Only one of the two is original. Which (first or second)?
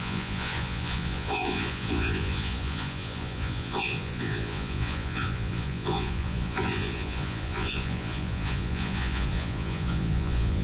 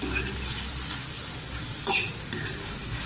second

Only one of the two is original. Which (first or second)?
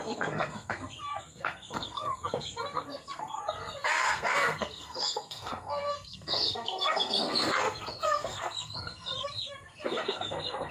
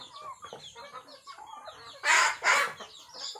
second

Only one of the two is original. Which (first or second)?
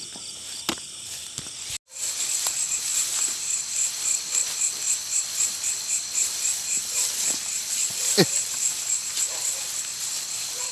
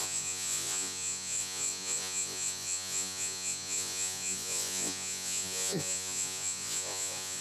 first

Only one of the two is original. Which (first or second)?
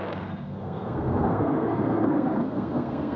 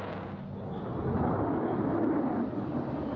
second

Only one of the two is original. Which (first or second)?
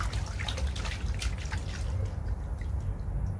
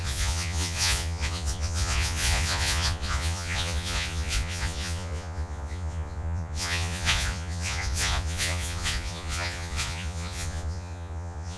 first